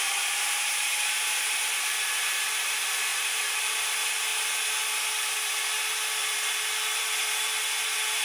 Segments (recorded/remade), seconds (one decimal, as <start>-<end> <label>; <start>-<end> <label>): 0.0-4.3 remade; 4.3-5.1 recorded; 5.1-8.2 remade